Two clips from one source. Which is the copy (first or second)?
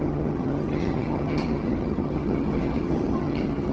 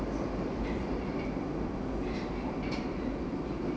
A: first